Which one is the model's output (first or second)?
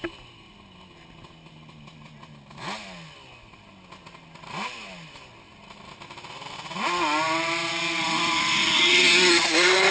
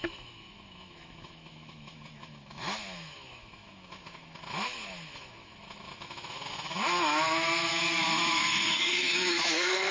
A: second